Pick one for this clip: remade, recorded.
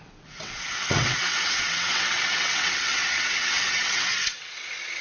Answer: remade